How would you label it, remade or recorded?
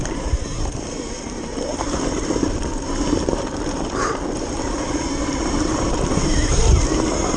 recorded